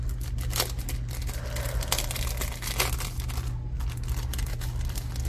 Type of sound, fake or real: real